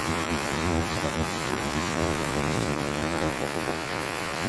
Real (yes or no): no